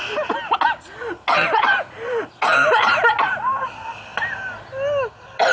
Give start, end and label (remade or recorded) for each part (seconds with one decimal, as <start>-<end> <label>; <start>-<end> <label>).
0.0-5.5 recorded